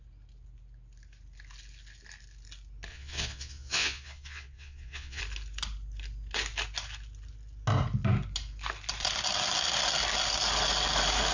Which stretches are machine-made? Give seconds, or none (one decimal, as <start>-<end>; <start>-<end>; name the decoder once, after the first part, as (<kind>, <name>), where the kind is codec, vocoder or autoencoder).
2.9-5.2 (vocoder, Vocos)